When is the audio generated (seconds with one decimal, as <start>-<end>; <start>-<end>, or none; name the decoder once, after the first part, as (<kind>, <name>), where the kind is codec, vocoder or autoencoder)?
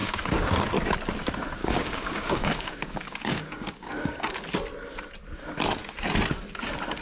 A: 0.0-0.6 (codec, DAC); 1.6-4.3